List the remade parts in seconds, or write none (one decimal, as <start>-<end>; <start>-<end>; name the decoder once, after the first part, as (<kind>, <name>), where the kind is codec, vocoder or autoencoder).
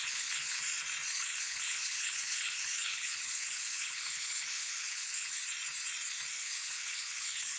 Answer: 0.0-0.6 (codec, HILCodec); 1.1-5.4; 6.3-7.6